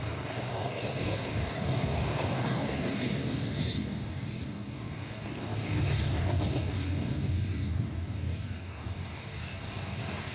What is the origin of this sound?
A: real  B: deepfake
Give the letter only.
B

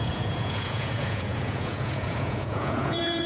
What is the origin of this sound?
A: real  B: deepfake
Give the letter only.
B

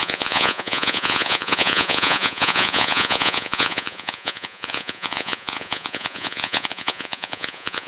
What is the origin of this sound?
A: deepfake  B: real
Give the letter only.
A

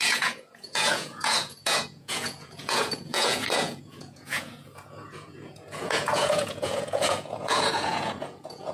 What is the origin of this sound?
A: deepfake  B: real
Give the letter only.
A